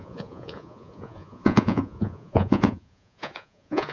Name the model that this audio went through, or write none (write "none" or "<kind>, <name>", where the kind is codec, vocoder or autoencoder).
vocoder, Vocos